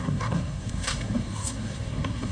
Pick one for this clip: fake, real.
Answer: fake